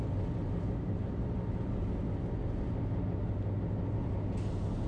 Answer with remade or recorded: recorded